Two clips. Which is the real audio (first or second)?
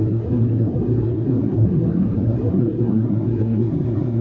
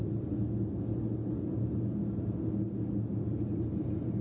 second